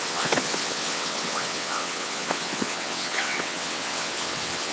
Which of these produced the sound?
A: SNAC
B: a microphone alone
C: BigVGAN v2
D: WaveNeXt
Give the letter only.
D